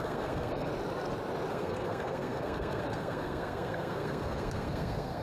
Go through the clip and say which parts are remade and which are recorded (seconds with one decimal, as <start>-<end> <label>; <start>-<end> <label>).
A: 0.0-0.7 remade; 0.7-1.5 recorded; 1.5-5.2 remade